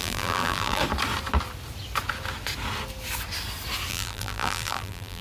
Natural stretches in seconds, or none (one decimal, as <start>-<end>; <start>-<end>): 0.8-3.9